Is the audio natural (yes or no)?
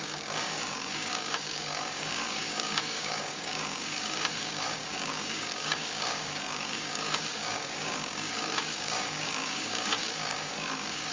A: no